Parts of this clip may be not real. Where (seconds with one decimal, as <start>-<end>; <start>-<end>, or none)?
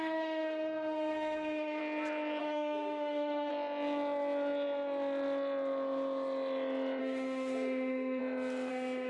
0.0-1.8; 2.4-3.5; 7.0-8.2; 8.7-9.1